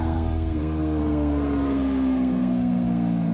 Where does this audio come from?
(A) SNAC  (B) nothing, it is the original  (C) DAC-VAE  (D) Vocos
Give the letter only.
A